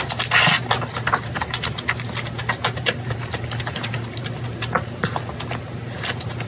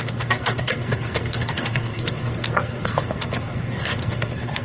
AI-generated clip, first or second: second